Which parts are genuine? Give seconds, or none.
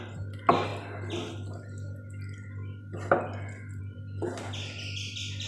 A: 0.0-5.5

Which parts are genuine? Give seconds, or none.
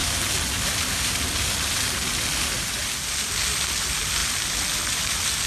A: 0.0-5.5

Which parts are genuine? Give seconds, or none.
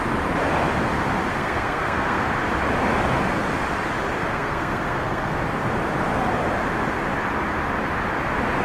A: 0.0-1.3; 2.3-4.2; 5.3-8.6